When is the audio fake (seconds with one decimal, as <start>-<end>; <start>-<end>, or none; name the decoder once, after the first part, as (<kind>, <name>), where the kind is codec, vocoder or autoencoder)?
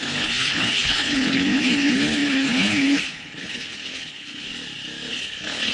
0.0-4.5 (codec, HILCodec); 5.1-5.7